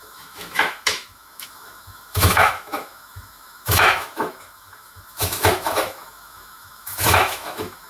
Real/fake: fake